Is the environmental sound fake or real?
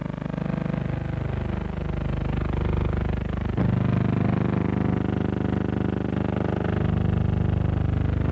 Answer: real